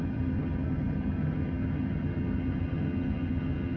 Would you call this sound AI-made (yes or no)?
yes